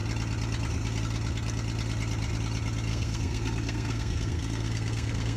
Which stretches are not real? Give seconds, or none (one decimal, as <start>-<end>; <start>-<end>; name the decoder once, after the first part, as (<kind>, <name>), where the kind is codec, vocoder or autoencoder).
2.9-5.4 (codec, SNAC)

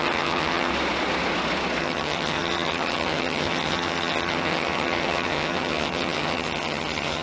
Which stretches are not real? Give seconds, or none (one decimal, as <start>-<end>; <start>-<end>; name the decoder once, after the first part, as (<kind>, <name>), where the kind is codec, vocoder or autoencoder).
0.0-0.7 (vocoder, HiFi-GAN); 1.8-7.2